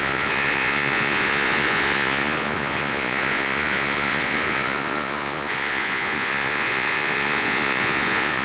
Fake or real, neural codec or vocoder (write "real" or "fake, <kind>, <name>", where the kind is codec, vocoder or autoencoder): fake, vocoder, Vocos